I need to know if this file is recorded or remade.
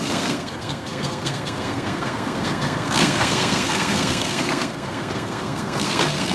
remade